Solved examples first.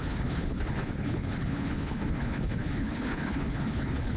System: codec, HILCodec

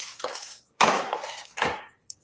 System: codec, SNAC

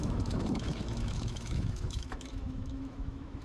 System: autoencoder, DAC-VAE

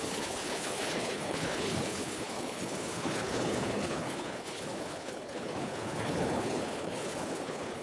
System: codec, HILCodec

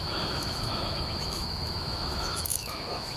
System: autoencoder, DAC-VAE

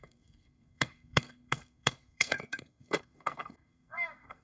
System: codec, SNAC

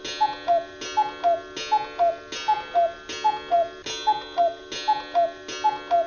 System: none